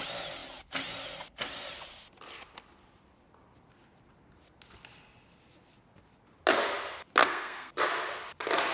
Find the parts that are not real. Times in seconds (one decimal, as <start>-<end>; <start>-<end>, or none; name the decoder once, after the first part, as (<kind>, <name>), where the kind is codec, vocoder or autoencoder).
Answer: 7.2-7.7 (codec, SNAC)